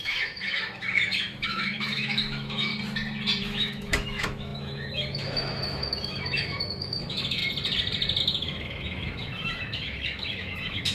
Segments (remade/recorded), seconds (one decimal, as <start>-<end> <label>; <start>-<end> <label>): 0.0-2.7 remade; 2.7-3.4 recorded; 3.4-7.4 remade; 7.4-8.2 recorded; 8.2-10.9 remade